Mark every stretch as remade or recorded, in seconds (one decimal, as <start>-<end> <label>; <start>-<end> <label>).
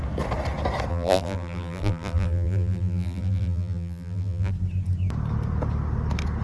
0.0-0.9 recorded; 0.9-4.5 remade; 4.5-6.4 recorded